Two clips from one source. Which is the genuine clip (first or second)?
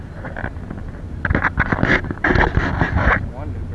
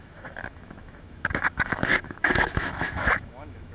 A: first